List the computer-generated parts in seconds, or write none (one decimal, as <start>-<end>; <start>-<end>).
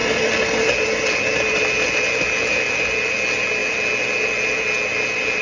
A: none